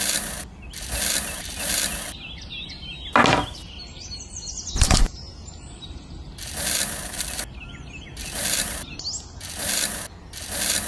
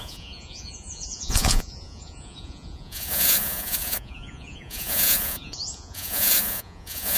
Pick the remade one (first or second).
second